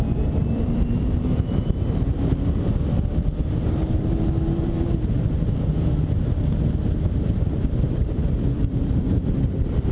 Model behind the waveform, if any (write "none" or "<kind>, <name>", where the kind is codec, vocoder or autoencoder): vocoder, BigVGAN v2